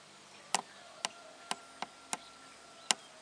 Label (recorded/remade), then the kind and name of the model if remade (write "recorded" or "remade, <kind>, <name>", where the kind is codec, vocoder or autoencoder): recorded